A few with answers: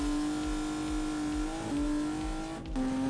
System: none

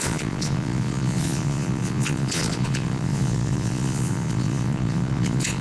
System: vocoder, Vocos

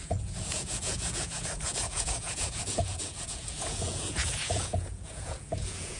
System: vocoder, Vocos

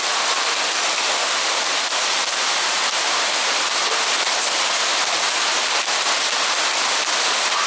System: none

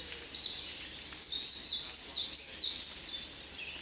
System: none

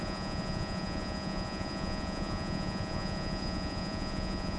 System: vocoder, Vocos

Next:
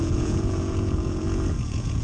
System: vocoder, Vocos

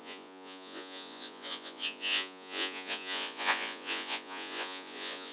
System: vocoder, Vocos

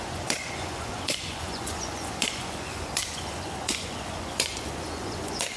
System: vocoder, Vocos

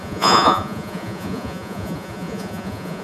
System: vocoder, Vocos